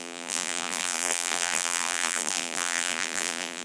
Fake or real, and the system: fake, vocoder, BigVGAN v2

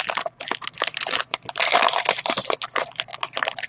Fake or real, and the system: fake, vocoder, BigVGAN v2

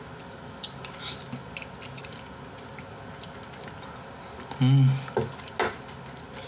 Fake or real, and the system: real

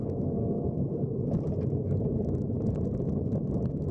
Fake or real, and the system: fake, vocoder, BigVGAN v2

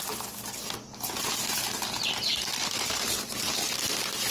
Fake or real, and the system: real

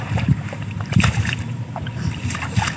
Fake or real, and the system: fake, vocoder, BigVGAN v2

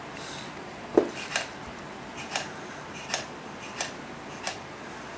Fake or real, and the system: real